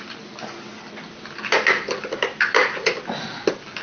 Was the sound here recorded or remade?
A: recorded